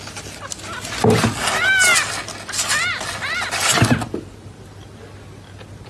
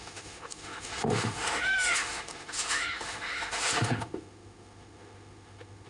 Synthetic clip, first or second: second